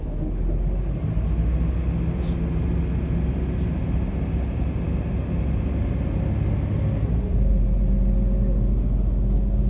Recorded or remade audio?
recorded